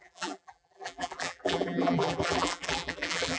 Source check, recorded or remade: remade